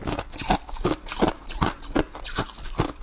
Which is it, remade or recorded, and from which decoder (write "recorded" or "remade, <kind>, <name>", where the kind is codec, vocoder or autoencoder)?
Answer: recorded